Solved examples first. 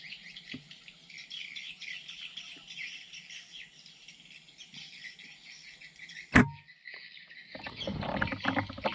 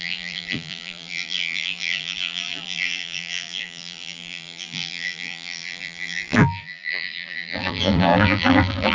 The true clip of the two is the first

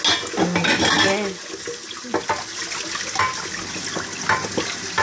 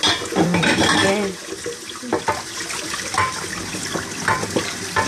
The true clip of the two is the first